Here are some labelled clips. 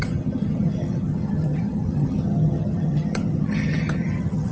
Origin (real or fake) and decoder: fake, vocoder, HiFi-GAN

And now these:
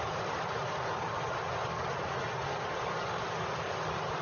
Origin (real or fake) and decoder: real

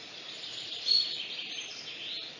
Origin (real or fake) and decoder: real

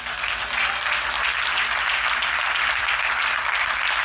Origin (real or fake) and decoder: real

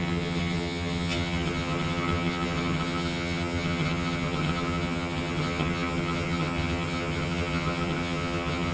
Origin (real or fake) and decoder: fake, vocoder, HiFi-GAN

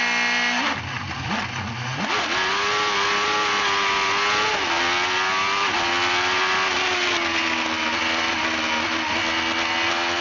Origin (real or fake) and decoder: real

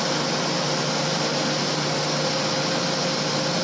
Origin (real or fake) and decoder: real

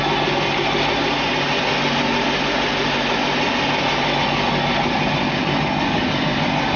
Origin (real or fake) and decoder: real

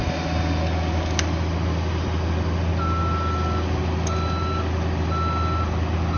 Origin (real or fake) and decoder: real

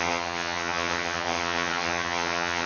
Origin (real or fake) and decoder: fake, vocoder, HiFi-GAN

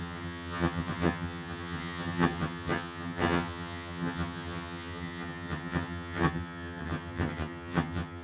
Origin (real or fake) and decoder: fake, vocoder, HiFi-GAN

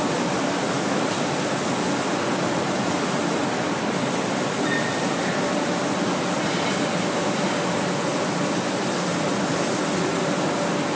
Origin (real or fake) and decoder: real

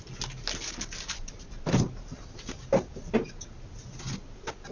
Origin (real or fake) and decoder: real